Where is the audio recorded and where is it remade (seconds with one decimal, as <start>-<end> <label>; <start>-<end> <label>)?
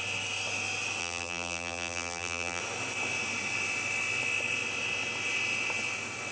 0.0-1.0 recorded; 1.0-2.6 remade; 2.6-6.3 recorded